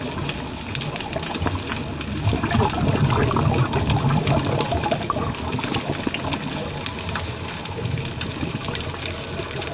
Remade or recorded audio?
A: recorded